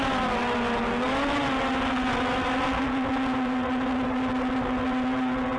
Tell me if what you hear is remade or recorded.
recorded